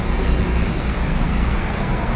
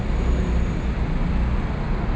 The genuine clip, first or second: second